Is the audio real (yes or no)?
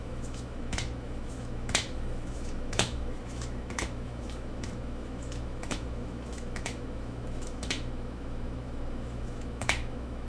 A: no